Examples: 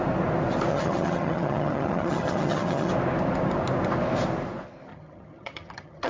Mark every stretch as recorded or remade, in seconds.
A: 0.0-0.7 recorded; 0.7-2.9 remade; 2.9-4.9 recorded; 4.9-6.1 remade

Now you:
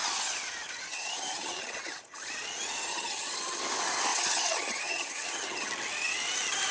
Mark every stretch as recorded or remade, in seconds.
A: 0.0-0.9 recorded; 0.9-2.3 remade; 2.3-2.9 recorded; 2.9-3.6 remade; 3.6-4.1 recorded; 4.1-5.7 remade; 5.7-6.7 recorded

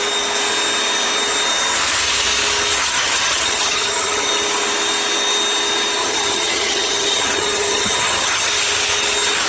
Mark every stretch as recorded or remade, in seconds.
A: 0.0-2.8 recorded; 2.8-4.3 remade; 4.3-6.0 recorded; 6.0-8.5 remade; 8.5-9.5 recorded